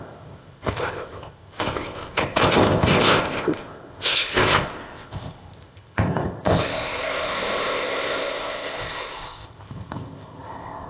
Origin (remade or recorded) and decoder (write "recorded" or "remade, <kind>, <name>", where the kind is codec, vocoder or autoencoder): remade, codec, ZipCodec